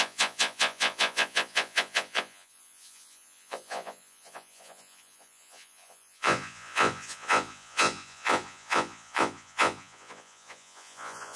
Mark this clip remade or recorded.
remade